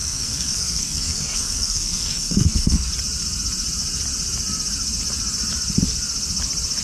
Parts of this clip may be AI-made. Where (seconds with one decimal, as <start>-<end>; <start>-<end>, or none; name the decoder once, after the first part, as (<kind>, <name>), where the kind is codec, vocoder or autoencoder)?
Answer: 0.0-2.9 (codec, SNAC)